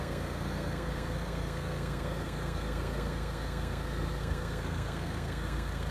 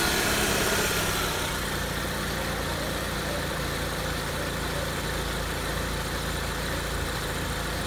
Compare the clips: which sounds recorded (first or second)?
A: second